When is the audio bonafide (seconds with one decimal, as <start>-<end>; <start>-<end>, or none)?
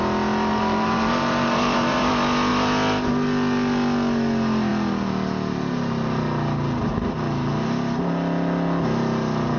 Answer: 0.0-0.5; 2.1-9.6